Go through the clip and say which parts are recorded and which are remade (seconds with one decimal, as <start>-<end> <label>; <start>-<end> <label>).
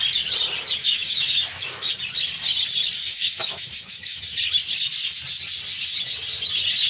0.0-0.8 recorded; 0.8-1.9 remade; 1.9-3.0 recorded; 3.0-4.2 remade; 4.2-6.9 recorded